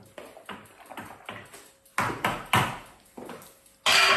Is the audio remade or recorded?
recorded